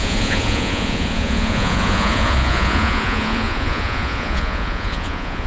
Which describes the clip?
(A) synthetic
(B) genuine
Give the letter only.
A